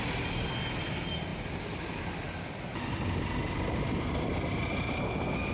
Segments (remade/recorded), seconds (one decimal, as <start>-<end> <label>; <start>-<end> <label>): 0.0-5.5 recorded